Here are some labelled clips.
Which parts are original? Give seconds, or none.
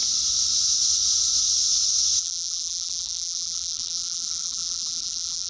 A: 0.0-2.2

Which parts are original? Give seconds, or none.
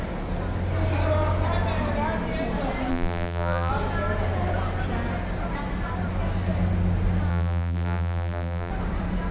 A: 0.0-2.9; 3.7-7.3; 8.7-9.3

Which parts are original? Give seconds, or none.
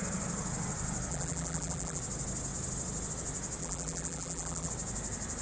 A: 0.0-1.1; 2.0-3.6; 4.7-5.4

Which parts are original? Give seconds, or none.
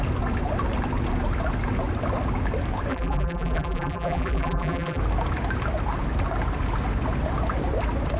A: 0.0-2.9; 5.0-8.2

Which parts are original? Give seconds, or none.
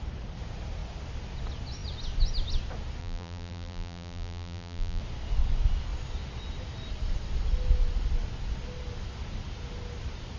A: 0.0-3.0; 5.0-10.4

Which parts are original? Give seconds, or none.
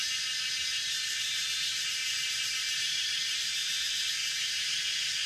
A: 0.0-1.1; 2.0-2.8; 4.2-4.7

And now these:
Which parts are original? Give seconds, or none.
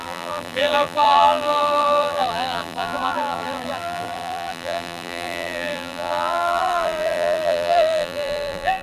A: none